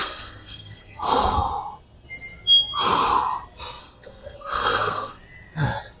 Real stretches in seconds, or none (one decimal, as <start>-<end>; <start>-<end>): 1.5-3.8; 5.2-6.0

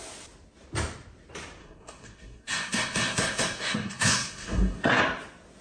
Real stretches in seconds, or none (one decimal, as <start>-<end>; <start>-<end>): 0.0-1.6; 5.0-5.6